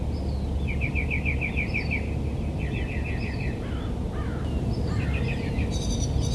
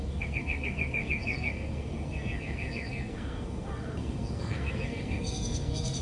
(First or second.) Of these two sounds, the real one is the first